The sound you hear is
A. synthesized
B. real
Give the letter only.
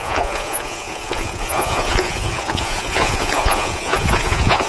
A